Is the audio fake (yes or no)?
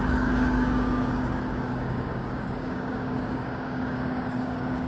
yes